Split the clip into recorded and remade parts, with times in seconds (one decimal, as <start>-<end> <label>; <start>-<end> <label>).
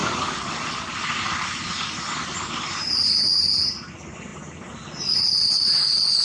0.0-6.2 recorded